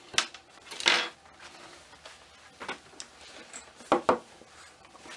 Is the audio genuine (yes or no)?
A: yes